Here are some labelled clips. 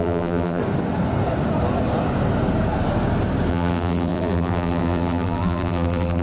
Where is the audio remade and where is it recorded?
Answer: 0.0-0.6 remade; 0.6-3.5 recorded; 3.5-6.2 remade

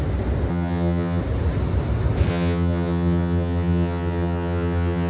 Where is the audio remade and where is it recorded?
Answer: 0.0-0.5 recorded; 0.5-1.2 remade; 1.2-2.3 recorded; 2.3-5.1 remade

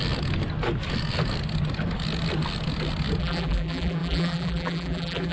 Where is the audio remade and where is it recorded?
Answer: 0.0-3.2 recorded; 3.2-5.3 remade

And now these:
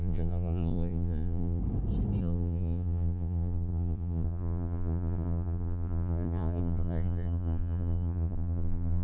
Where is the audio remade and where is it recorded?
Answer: 0.0-1.6 remade; 1.6-2.2 recorded; 2.2-9.0 remade